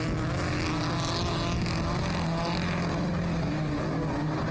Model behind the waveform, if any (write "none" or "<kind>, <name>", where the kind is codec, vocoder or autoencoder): none